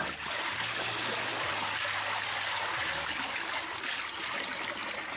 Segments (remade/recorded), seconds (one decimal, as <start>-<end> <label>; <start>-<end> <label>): 0.0-5.2 recorded